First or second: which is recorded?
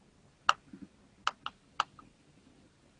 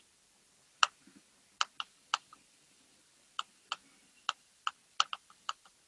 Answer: first